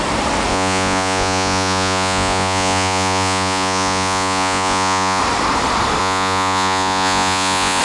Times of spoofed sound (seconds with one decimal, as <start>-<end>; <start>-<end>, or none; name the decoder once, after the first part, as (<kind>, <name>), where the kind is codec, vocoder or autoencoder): 0.5-5.2 (vocoder, Vocos); 6.0-7.8